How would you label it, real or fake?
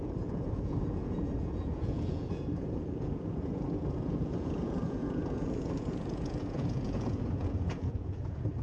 fake